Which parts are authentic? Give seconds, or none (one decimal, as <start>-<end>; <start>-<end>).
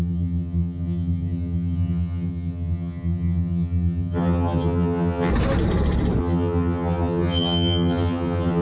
5.3-6.2